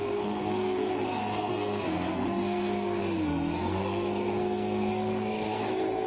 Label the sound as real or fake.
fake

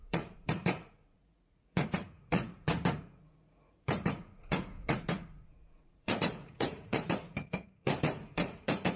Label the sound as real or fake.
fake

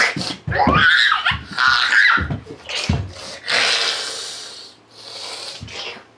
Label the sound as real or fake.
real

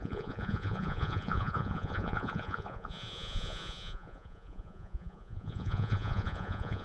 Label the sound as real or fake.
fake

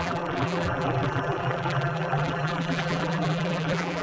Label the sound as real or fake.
fake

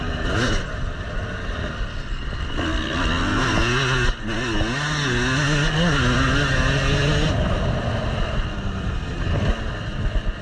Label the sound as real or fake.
real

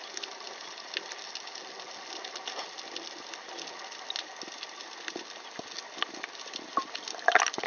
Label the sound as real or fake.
real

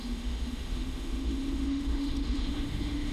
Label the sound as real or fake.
fake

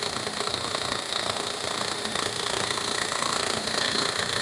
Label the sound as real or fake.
fake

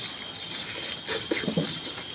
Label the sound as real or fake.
real